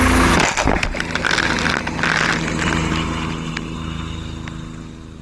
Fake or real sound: real